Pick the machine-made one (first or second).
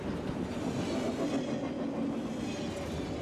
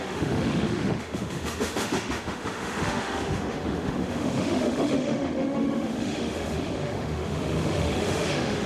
second